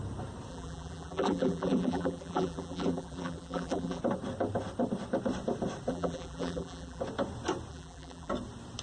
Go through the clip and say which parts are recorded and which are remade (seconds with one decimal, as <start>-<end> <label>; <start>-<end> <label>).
0.0-0.5 recorded; 0.5-4.0 remade; 4.0-5.9 recorded; 5.9-7.0 remade; 7.0-7.7 recorded; 7.7-8.3 remade; 8.3-8.8 recorded

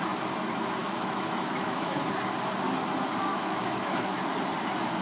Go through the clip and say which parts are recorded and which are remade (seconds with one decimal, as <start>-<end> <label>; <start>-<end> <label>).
0.0-0.8 recorded; 0.8-2.1 remade; 2.1-3.3 recorded; 3.3-4.2 remade; 4.2-5.0 recorded

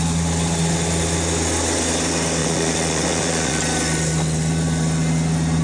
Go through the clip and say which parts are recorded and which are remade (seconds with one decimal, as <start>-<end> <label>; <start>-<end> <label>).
0.0-2.4 recorded; 2.4-3.6 remade; 3.6-5.6 recorded

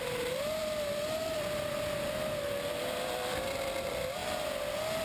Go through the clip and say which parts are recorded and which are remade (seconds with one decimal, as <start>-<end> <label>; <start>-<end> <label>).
0.0-0.6 recorded; 0.6-3.4 remade; 3.4-5.0 recorded

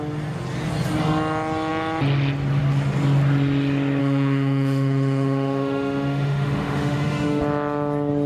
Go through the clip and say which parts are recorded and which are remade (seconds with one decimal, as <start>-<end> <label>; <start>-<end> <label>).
0.0-4.0 recorded; 4.0-7.4 remade; 7.4-8.3 recorded

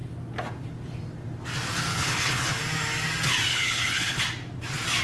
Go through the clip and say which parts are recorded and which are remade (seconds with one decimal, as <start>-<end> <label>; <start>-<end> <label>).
0.0-1.9 recorded; 1.9-2.6 remade; 2.6-3.5 recorded; 3.5-4.2 remade; 4.2-5.0 recorded

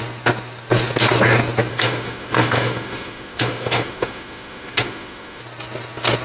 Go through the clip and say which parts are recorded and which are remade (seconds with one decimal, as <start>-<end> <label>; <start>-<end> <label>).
0.0-1.7 recorded; 1.7-5.4 remade; 5.4-6.2 recorded

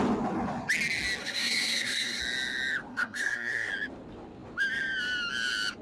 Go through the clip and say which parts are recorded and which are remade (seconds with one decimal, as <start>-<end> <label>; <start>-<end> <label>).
0.0-1.2 recorded; 1.2-2.2 remade; 2.2-2.9 recorded; 2.9-3.7 remade; 3.7-5.8 recorded